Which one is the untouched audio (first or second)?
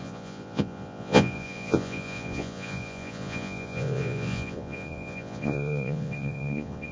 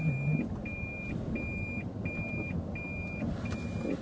second